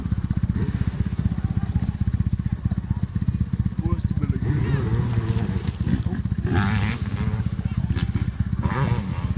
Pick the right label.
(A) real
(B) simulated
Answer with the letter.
A